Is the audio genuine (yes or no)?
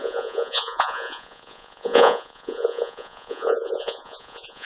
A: no